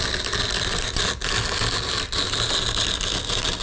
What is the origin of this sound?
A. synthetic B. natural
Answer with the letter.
B